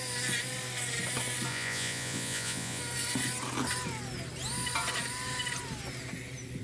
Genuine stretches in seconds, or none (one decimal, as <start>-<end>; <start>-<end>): 0.0-1.5; 2.8-6.6